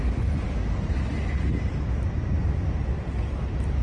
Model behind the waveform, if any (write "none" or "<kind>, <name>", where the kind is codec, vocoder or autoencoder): none